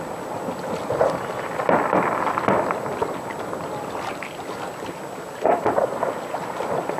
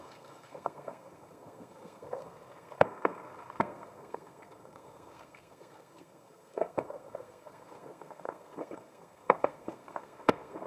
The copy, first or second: second